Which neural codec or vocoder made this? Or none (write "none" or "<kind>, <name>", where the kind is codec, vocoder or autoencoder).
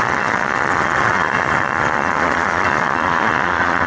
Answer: vocoder, Vocos